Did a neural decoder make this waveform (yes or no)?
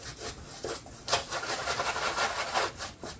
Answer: no